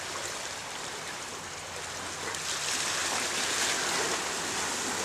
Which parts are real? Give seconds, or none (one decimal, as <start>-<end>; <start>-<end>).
0.0-0.6; 1.7-5.0